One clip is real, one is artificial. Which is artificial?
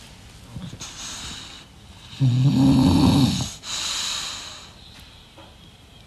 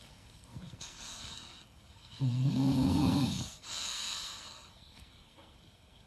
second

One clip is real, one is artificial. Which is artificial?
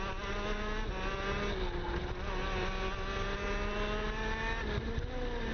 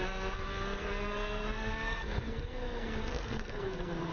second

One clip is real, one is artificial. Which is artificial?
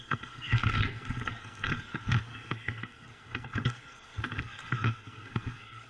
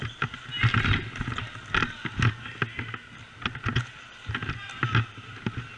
first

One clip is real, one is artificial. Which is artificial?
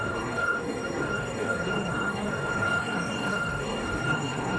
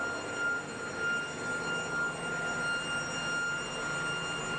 first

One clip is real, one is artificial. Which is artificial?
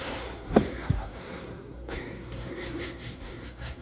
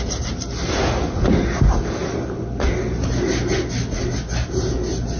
first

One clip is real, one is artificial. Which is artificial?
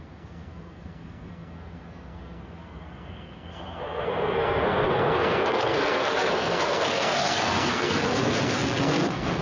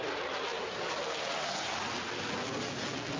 first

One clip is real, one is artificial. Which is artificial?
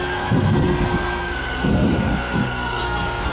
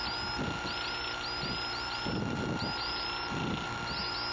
first